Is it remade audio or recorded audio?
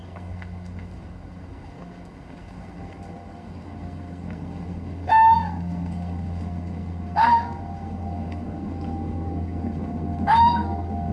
remade